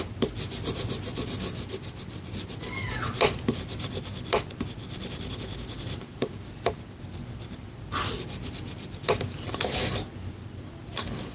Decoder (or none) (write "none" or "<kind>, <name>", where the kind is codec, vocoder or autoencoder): none